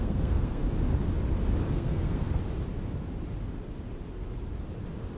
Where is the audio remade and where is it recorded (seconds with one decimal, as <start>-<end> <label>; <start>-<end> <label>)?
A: 0.0-0.6 remade; 0.6-1.7 recorded; 1.7-2.4 remade; 2.4-5.2 recorded